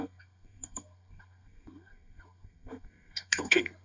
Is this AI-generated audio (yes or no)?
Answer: yes